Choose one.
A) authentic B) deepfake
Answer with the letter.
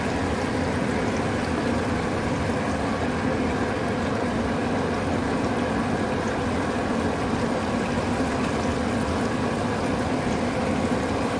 A